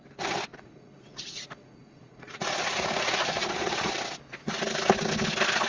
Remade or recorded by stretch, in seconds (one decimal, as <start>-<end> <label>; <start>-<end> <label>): 0.0-0.5 recorded; 0.5-3.9 remade; 3.9-5.7 recorded

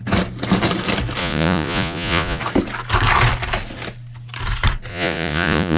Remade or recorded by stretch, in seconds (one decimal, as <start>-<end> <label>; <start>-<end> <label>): 0.0-1.2 recorded; 1.2-2.4 remade; 2.4-4.9 recorded; 4.9-5.8 remade

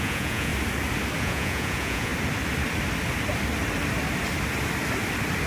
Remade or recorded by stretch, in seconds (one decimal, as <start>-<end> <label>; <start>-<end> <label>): 0.0-0.5 remade; 0.5-1.2 recorded; 1.2-2.1 remade; 2.1-5.5 recorded